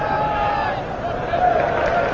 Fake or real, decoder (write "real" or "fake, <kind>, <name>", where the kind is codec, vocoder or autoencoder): real